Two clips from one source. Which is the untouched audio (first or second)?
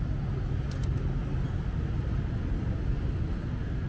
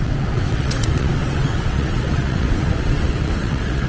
first